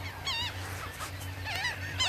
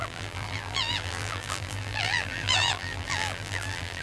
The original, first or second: first